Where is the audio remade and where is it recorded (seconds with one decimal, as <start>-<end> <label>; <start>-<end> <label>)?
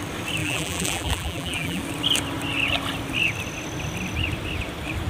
0.0-0.4 recorded; 0.4-1.8 remade; 1.8-5.1 recorded